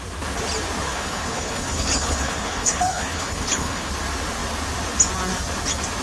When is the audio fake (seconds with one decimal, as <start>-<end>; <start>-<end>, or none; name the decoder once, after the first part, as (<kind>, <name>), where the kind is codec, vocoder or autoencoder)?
0.9-3.9 (codec, HILCodec)